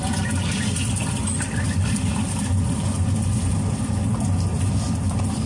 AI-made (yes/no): no